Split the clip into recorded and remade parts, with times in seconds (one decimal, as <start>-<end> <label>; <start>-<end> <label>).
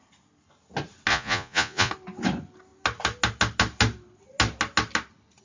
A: 0.0-1.1 recorded; 1.1-1.9 remade; 1.9-5.4 recorded